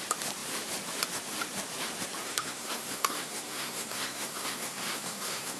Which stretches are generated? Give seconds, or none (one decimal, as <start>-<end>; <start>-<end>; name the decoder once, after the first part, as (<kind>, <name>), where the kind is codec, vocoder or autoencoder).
2.2-5.6 (codec, SNAC)